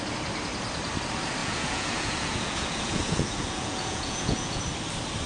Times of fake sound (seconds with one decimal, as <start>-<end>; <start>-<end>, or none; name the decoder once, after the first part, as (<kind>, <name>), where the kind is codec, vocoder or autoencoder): 1.4-4.6 (vocoder, Vocos)